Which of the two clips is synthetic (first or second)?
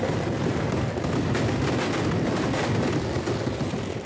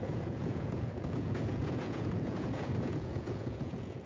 second